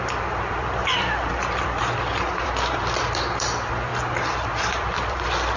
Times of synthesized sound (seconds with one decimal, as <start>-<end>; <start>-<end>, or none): 0.0-3.9; 4.5-5.6